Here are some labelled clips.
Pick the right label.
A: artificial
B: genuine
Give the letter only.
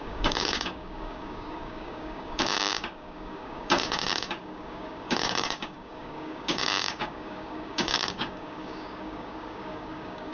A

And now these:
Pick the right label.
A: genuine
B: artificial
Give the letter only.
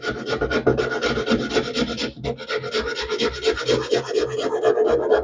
A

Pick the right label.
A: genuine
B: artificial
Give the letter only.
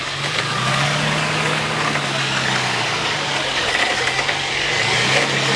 B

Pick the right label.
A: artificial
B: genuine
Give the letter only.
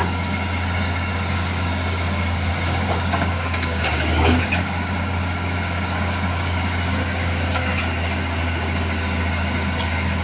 A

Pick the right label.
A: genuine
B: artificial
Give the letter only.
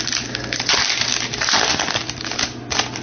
A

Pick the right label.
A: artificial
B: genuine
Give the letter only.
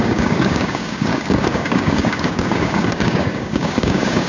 A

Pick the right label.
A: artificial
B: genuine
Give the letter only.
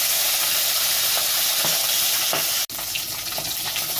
B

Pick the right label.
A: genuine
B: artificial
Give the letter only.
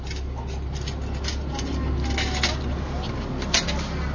A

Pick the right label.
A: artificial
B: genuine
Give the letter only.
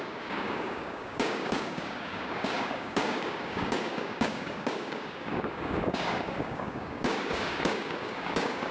A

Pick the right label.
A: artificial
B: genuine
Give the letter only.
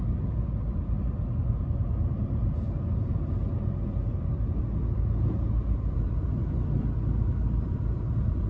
B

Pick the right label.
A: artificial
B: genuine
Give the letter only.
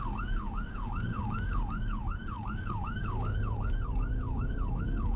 A